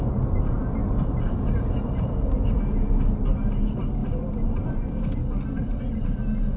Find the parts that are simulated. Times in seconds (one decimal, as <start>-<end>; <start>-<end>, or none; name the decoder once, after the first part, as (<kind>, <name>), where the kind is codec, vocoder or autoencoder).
0.8-1.4 (vocoder, BigVGAN v2); 5.2-5.8